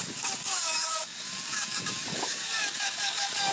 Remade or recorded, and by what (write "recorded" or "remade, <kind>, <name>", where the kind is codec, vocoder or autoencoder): remade, codec, DAC